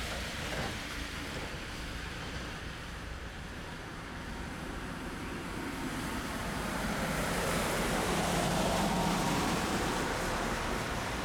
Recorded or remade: remade